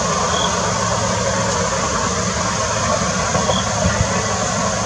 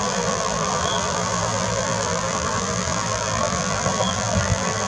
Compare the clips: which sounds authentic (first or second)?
first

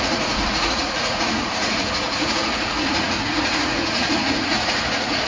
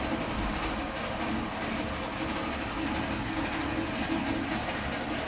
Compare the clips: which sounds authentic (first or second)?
second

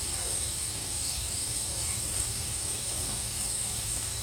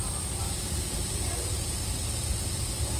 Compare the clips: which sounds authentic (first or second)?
second